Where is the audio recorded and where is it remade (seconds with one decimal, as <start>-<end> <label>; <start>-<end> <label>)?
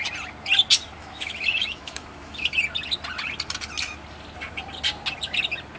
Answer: 0.0-1.0 recorded; 1.0-2.6 remade; 2.6-5.8 recorded